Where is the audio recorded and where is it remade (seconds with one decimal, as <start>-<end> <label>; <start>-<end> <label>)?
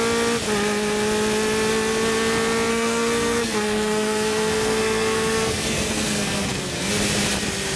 0.0-2.7 recorded; 2.7-6.9 remade; 6.9-7.8 recorded